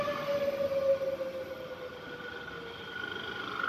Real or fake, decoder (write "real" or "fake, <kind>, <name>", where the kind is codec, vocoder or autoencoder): real